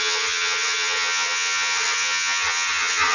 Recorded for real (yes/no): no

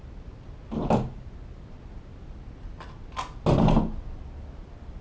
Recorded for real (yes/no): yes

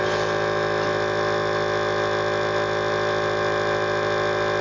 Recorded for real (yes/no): yes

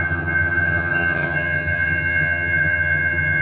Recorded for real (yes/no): no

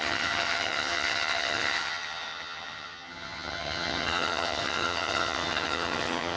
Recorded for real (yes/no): no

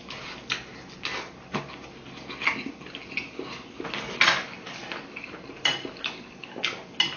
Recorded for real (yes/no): yes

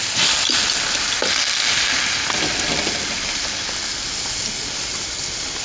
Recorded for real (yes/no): yes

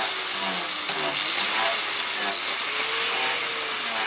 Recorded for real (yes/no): yes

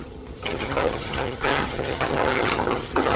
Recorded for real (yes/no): no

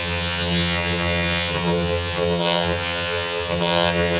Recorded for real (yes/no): no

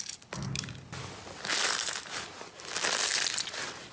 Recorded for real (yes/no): yes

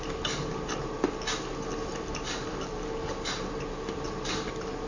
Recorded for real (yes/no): yes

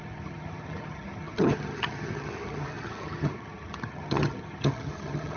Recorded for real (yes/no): no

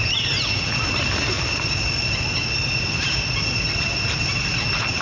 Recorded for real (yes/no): yes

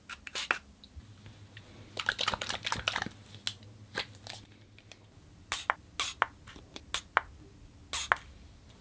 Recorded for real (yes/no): yes